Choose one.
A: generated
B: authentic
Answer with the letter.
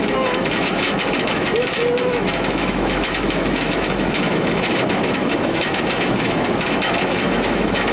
A